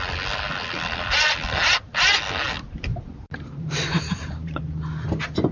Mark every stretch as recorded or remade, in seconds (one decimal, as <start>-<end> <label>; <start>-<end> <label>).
0.0-2.9 recorded; 2.9-4.6 remade; 4.6-5.5 recorded